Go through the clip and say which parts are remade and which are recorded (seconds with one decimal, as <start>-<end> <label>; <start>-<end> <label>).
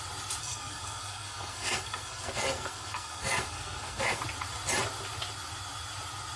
0.0-0.4 recorded; 0.4-4.2 remade; 4.2-6.4 recorded